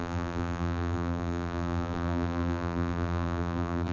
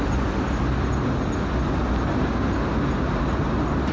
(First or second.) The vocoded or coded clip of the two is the first